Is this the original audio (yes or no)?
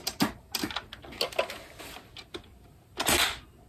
yes